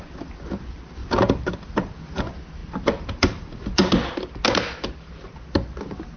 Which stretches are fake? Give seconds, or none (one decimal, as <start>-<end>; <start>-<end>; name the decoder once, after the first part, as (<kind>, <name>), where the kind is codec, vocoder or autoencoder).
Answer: 1.0-2.2 (vocoder, BigVGAN v2); 2.6-3.5